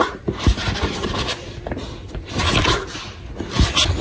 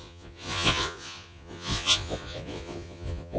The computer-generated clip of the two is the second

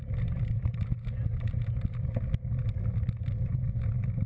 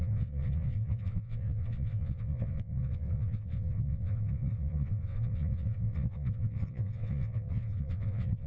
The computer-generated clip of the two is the second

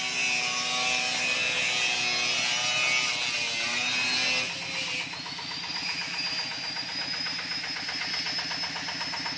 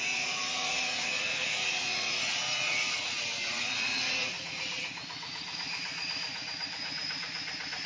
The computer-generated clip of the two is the second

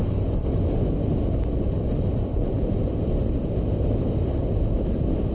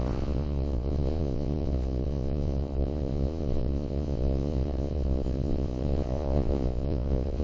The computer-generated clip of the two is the second